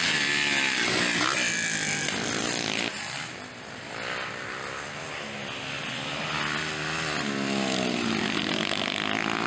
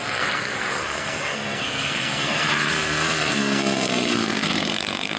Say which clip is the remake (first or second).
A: second